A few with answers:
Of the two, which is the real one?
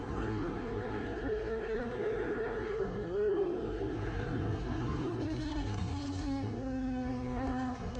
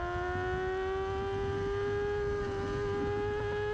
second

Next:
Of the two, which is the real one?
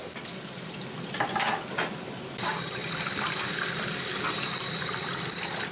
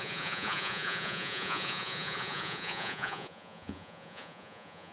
first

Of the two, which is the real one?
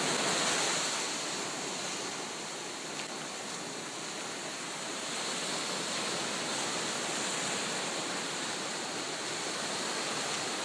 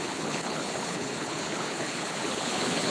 first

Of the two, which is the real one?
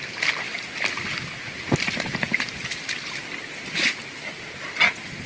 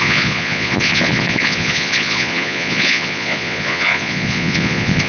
first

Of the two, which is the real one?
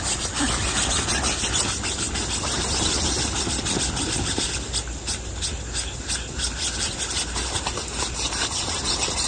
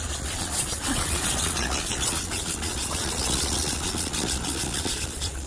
first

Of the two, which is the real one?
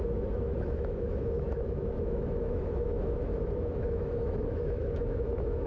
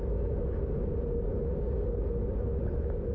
second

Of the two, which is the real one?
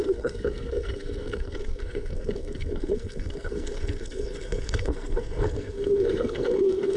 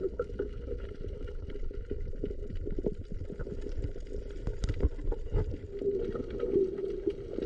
second